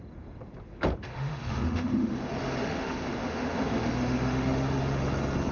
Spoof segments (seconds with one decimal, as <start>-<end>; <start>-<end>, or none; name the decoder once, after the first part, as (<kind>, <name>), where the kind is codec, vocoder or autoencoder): 1.1-2.3 (autoencoder, DAC-VAE); 2.7-5.0